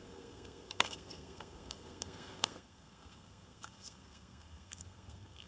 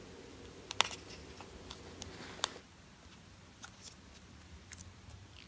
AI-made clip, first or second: first